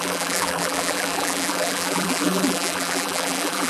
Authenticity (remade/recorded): remade